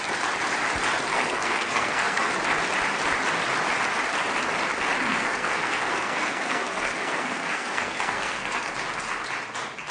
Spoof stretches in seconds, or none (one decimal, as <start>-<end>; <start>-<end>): 1.1-2.3; 5.1-8.7